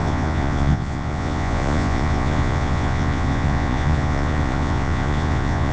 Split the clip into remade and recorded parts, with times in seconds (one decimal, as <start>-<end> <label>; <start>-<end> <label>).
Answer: 0.0-5.7 remade